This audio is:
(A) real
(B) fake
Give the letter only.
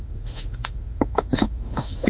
B